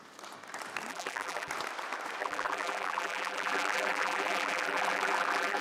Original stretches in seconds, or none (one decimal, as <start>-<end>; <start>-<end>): 0.0-0.9; 1.5-2.2